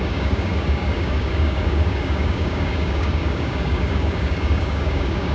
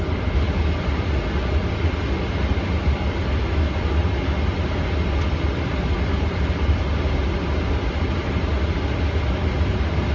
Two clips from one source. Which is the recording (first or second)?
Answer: second